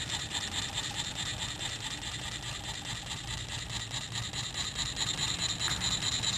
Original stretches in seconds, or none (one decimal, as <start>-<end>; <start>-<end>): 0.0-6.4